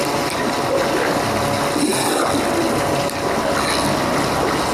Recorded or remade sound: recorded